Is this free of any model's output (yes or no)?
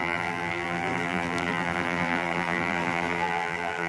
no